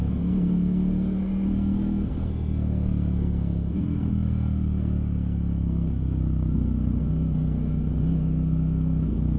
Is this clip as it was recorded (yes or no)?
no